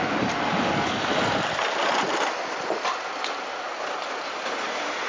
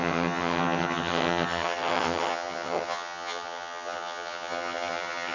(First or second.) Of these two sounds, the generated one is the second